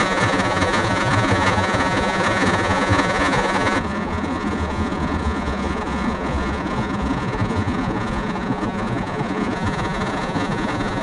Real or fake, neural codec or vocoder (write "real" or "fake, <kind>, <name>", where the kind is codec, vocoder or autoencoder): fake, vocoder, Vocos